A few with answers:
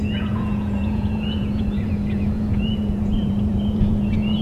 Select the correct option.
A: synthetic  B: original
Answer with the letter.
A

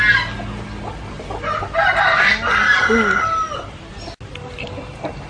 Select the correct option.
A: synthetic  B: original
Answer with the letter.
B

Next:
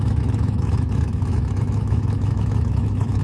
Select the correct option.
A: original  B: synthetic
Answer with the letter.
B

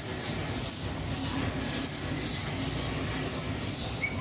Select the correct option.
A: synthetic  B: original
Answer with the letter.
B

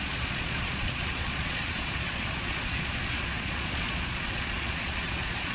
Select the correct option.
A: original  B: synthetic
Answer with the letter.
B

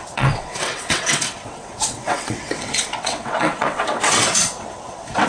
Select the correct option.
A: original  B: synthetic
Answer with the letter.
B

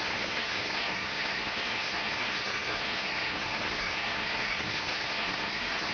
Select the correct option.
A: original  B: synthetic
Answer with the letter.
B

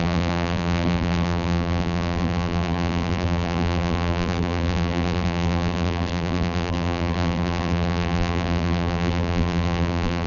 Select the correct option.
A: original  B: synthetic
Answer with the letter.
B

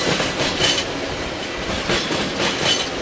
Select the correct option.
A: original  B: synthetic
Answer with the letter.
A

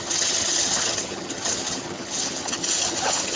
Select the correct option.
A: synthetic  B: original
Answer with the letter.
A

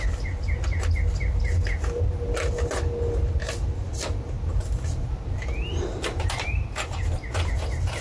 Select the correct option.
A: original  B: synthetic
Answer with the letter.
A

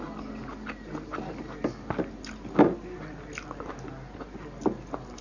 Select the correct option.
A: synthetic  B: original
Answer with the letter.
B